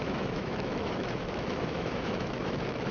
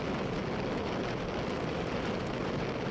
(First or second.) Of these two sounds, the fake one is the first